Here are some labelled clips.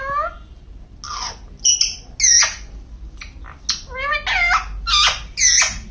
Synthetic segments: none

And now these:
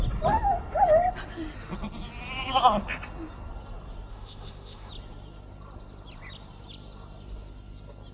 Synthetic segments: 4.1-4.9 (autoencoder, DAC-VAE)

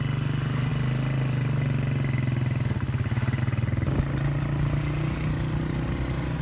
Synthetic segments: none

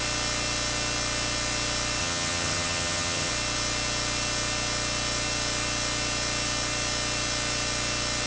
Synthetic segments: 2.0-3.3 (vocoder, HiFi-GAN)

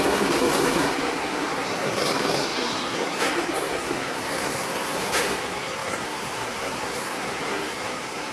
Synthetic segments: 0.0-8.3 (codec, SNAC)